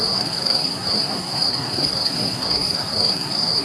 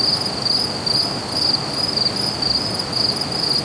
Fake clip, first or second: first